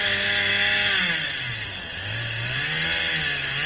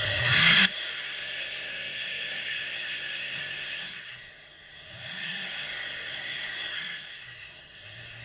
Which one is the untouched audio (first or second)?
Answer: first